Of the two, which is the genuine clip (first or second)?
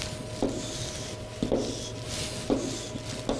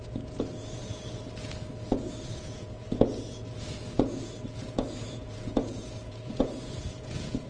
first